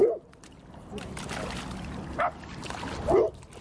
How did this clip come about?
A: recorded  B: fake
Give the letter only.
A